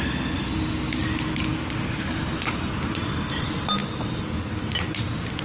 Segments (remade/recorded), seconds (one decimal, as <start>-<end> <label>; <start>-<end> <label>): 0.0-5.4 recorded